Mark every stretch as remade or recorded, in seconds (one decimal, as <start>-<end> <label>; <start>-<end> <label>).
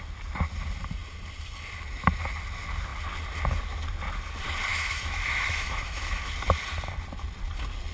0.0-4.7 recorded; 4.7-6.3 remade; 6.3-7.9 recorded